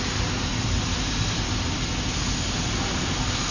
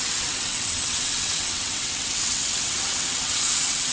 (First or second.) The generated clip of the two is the second